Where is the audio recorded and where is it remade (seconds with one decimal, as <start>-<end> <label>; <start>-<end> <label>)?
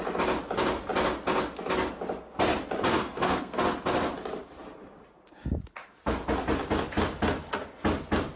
0.0-2.9 recorded; 2.9-3.6 remade; 3.6-8.4 recorded